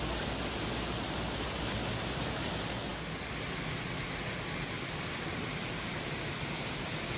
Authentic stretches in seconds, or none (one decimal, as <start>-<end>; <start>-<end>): 0.0-7.2